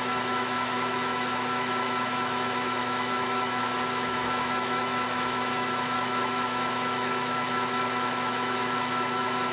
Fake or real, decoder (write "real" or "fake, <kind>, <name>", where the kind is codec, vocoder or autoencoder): fake, autoencoder, DAC-VAE